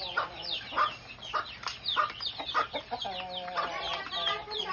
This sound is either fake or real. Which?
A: real